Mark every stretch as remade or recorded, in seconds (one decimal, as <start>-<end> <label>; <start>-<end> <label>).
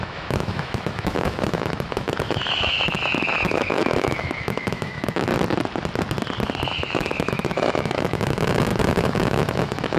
0.0-5.3 remade; 5.3-6.6 recorded; 6.6-10.0 remade